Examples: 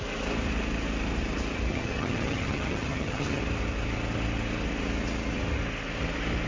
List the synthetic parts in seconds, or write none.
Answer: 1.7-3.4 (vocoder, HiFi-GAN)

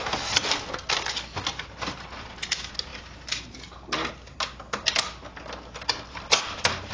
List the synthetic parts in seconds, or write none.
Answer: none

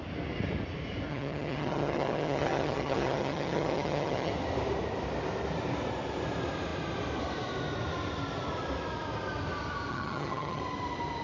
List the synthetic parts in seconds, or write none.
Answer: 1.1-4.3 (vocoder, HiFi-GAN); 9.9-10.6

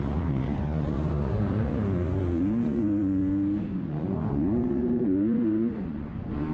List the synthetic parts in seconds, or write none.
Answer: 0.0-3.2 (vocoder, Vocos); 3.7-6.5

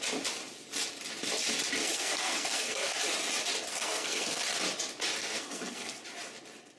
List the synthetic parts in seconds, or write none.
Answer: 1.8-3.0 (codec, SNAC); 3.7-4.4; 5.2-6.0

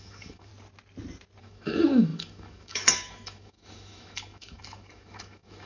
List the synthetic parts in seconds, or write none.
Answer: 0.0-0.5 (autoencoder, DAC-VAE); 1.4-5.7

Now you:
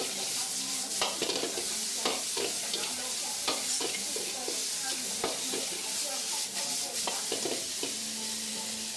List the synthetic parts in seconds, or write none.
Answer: none

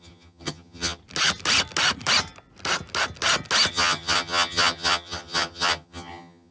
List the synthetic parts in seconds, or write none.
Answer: 0.0-1.0 (vocoder, HiFi-GAN); 3.7-6.5